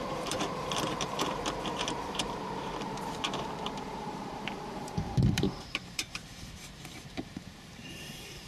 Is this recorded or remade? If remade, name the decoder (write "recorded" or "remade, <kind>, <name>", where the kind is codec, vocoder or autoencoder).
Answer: remade, vocoder, BigVGAN v2